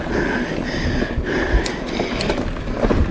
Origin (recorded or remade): recorded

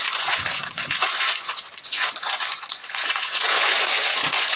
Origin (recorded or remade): remade